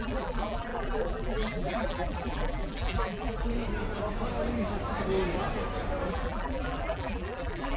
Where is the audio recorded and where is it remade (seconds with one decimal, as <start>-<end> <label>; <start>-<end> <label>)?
0.0-3.5 remade; 3.5-6.1 recorded; 6.1-7.8 remade